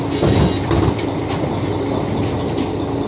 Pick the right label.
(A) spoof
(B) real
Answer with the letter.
B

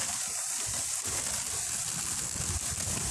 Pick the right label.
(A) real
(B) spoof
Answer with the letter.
A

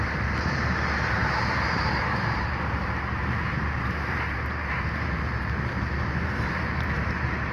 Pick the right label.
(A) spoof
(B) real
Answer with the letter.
A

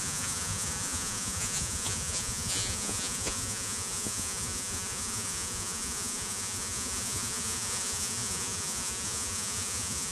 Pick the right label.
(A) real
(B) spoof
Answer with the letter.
B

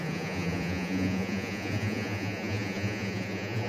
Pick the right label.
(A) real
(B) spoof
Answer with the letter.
B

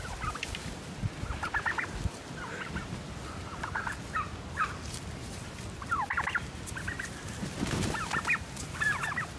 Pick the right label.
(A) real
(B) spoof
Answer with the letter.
A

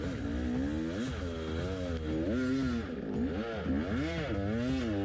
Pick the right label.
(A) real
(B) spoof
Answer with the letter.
A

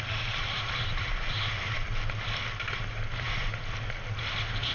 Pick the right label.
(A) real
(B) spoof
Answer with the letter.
A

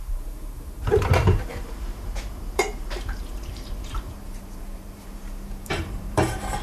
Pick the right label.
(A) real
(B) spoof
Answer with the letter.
B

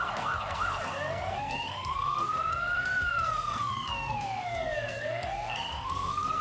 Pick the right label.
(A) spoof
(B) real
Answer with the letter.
A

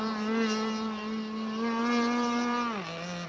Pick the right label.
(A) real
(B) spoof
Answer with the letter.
A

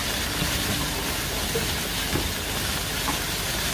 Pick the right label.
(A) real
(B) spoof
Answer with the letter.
A